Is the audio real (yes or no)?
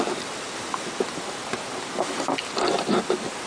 yes